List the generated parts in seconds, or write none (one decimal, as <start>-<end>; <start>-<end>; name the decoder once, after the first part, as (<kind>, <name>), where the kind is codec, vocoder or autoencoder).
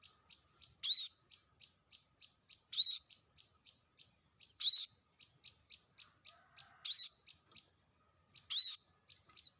1.8-4.4 (vocoder, BigVGAN v2)